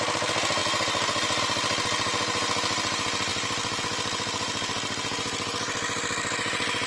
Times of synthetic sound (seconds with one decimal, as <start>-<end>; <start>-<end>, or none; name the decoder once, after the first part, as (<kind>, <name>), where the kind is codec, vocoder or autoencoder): 3.3-3.8 (vocoder, BigVGAN v2)